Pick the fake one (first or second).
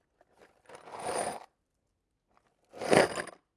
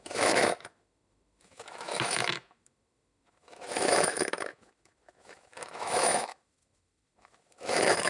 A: second